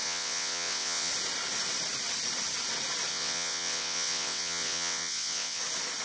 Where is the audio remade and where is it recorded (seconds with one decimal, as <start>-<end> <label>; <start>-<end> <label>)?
0.0-1.1 remade; 1.1-3.1 recorded; 3.1-5.6 remade; 5.6-6.0 recorded